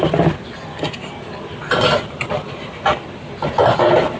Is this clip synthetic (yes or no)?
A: no